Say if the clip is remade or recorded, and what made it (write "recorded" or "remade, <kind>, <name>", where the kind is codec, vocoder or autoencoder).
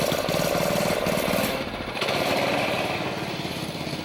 recorded